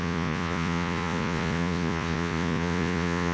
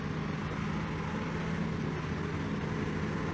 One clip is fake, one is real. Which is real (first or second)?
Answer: second